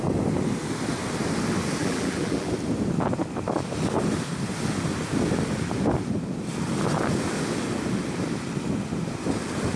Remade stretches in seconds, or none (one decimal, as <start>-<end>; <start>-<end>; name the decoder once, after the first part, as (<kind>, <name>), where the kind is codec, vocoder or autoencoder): 1.8-2.5 (vocoder, BigVGAN v2)